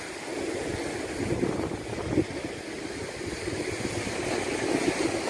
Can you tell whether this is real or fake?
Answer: real